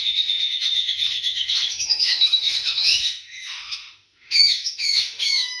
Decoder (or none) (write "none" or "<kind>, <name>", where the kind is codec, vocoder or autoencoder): autoencoder, DAC-VAE